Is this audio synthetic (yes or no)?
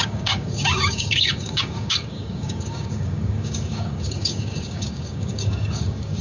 yes